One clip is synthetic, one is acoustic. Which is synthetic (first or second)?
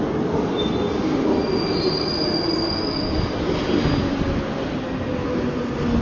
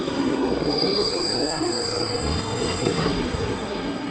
second